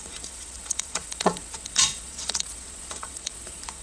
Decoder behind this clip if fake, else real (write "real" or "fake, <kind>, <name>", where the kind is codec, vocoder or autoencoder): fake, vocoder, Vocos